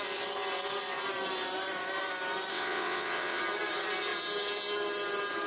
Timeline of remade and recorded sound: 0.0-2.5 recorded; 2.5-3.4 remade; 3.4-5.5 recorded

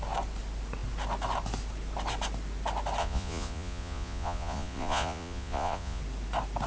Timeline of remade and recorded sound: 0.0-3.0 recorded; 3.0-6.0 remade; 6.0-6.7 recorded

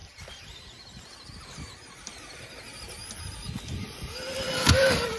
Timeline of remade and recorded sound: 0.0-5.2 recorded

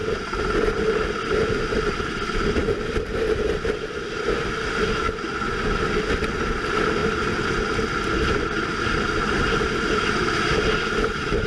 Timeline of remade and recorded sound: 0.0-2.6 recorded; 2.6-3.5 remade; 3.5-7.0 recorded; 7.0-8.8 remade; 8.8-11.5 recorded